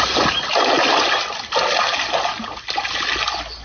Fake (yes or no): no